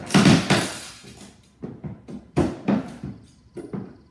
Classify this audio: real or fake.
real